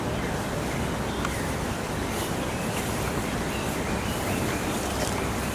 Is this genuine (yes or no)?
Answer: yes